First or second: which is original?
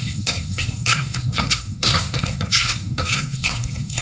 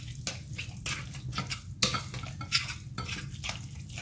second